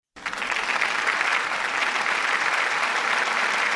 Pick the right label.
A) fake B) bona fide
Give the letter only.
B